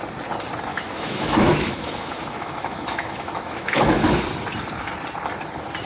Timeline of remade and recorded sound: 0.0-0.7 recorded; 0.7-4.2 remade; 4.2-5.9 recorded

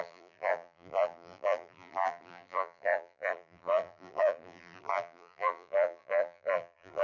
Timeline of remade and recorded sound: 0.0-7.0 remade

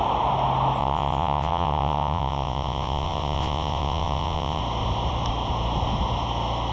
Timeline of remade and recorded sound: 0.0-0.8 recorded; 0.8-4.6 remade; 4.6-6.7 recorded

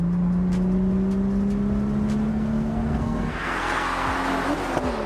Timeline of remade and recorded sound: 0.0-2.3 recorded; 2.3-4.1 remade; 4.1-5.1 recorded

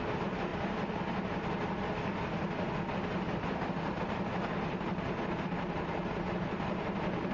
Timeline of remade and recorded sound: 0.0-0.5 remade; 0.5-4.0 recorded; 4.0-7.3 remade

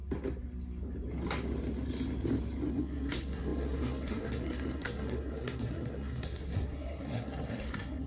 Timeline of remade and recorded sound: 0.0-2.7 recorded; 2.7-8.1 remade

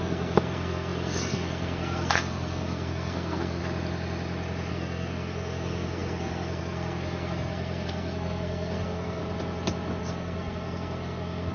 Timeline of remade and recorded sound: 0.0-3.6 remade; 3.6-4.7 recorded; 4.7-9.2 remade; 9.2-10.0 recorded; 10.0-11.5 remade

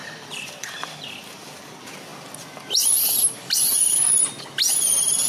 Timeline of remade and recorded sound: 0.0-1.6 remade; 1.6-5.3 recorded